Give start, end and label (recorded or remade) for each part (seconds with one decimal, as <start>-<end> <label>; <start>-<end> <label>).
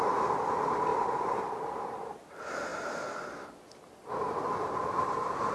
0.0-0.9 recorded; 0.9-2.2 remade; 2.2-5.5 recorded